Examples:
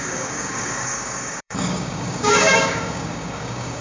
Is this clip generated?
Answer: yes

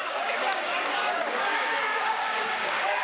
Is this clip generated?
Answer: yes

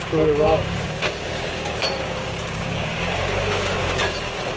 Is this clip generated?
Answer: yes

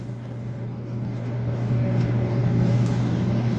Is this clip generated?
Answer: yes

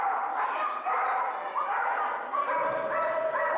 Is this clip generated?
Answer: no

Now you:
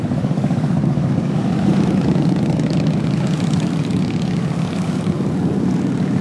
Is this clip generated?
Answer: yes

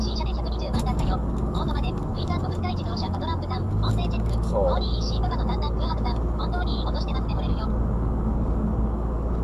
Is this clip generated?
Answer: yes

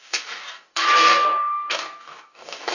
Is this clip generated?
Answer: yes